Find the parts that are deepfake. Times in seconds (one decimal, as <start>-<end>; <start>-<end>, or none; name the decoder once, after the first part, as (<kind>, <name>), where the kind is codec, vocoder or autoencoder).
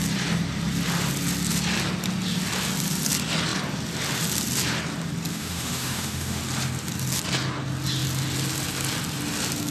5.3-6.4 (autoencoder, DAC-VAE)